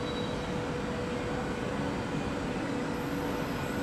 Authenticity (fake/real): real